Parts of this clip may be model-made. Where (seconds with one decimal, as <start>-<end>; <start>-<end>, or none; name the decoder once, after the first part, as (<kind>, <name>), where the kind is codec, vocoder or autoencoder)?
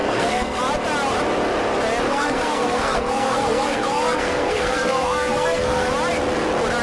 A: 0.0-0.6 (codec, SNAC); 2.1-5.9